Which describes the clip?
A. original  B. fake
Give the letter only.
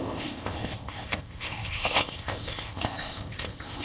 B